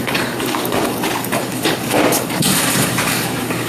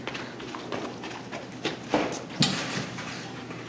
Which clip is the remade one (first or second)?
first